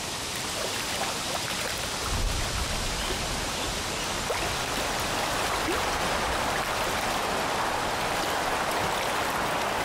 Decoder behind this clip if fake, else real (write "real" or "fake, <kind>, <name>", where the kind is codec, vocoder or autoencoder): real